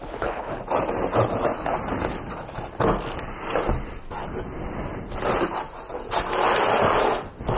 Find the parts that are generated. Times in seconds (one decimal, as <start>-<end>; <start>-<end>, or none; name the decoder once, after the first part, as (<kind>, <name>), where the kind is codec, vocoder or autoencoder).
0.0-0.6 (codec, HILCodec)